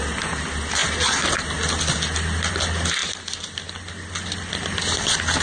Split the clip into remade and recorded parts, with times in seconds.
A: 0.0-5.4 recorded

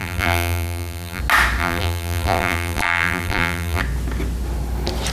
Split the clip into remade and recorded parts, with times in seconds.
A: 0.0-1.2 remade; 1.2-1.6 recorded; 1.6-3.8 remade; 3.8-5.1 recorded

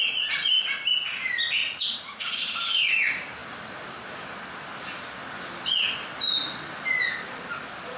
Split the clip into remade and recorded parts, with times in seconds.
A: 0.0-1.6 recorded; 1.6-2.4 remade; 2.4-8.0 recorded

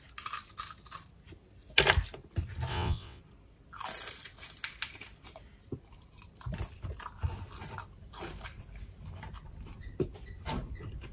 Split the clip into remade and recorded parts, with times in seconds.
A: 0.0-2.7 recorded; 2.7-3.2 remade; 3.2-11.1 recorded

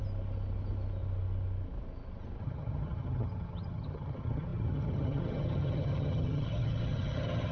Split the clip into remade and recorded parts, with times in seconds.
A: 0.0-2.4 recorded; 2.4-7.5 remade

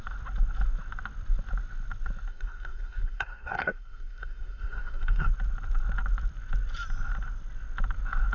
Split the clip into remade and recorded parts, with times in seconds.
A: 0.0-2.3 recorded; 2.3-5.3 remade; 5.3-8.3 recorded

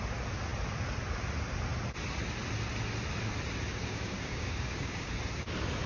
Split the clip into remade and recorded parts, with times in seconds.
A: 0.0-3.7 recorded; 3.7-5.1 remade; 5.1-5.9 recorded